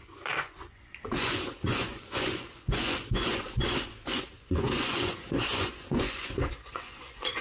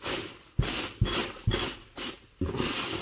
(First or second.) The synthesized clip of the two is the first